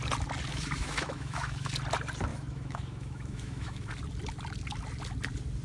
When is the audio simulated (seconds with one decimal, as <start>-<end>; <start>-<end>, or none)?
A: 0.5-1.7; 2.3-3.9